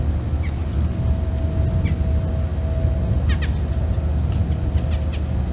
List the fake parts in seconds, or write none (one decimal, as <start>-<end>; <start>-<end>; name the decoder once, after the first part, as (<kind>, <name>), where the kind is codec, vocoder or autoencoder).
none